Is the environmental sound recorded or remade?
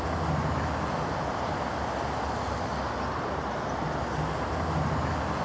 recorded